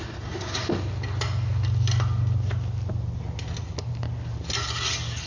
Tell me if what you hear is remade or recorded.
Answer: recorded